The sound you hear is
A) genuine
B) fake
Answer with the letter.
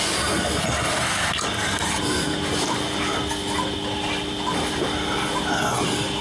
A